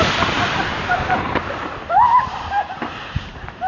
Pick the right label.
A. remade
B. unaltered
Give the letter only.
A